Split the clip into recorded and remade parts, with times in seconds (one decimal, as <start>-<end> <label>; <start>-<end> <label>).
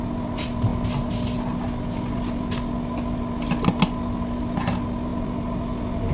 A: 0.0-6.1 recorded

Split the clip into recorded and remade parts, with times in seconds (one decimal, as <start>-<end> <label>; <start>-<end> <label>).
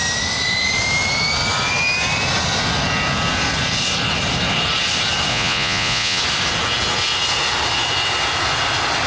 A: 0.0-5.3 recorded; 5.3-6.2 remade; 6.2-9.1 recorded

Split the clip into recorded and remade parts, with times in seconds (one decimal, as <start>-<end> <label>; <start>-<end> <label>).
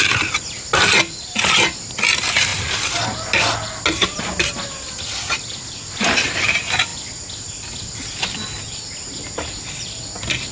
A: 0.0-10.5 recorded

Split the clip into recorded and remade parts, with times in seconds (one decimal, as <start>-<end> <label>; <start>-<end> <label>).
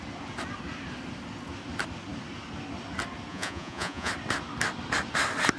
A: 0.0-3.3 recorded; 3.3-4.1 remade; 4.1-5.6 recorded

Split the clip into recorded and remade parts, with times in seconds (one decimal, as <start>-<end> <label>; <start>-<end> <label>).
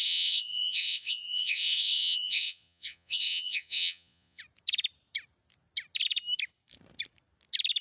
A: 0.0-4.4 remade; 4.4-7.8 recorded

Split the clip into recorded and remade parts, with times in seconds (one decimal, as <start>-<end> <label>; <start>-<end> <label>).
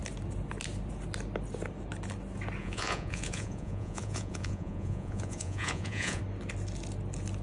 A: 0.0-2.6 recorded; 2.6-6.2 remade; 6.2-7.4 recorded